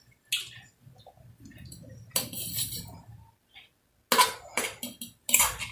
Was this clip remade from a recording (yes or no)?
no